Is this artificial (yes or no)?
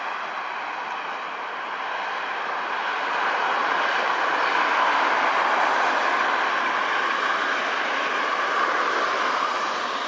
no